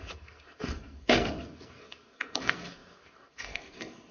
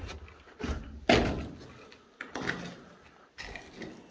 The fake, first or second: first